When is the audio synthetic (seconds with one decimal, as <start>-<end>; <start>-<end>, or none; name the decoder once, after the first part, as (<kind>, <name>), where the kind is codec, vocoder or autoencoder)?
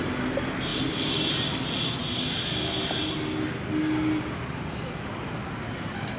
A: none